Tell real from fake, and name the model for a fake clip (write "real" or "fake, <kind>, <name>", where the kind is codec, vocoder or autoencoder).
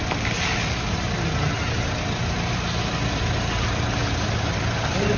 real